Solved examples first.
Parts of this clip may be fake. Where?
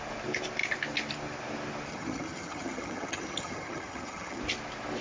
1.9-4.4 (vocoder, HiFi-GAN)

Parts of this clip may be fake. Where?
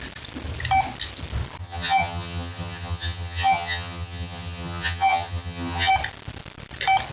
1.6-5.9 (vocoder, HiFi-GAN)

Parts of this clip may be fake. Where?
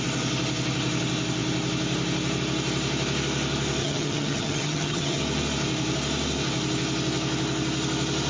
3.8-5.2 (vocoder, HiFi-GAN)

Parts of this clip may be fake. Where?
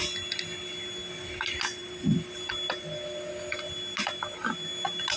none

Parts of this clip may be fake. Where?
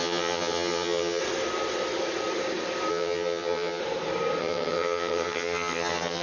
0.0-1.2 (vocoder, HiFi-GAN); 2.9-3.8; 4.4-6.2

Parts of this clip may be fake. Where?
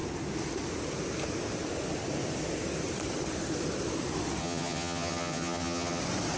4.4-6.0 (vocoder, HiFi-GAN)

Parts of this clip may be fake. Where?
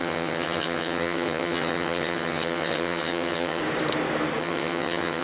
0.0-3.6 (vocoder, HiFi-GAN); 4.4-5.2